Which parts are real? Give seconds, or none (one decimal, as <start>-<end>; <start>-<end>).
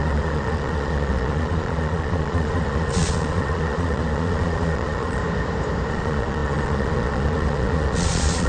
5.2-5.9